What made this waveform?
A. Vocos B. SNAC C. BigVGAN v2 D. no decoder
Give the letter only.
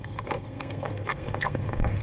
B